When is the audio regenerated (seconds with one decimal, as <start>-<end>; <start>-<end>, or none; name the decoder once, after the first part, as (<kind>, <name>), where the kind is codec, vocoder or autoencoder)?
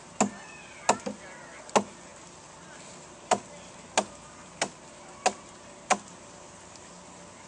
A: none